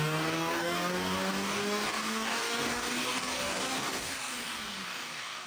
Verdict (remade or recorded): remade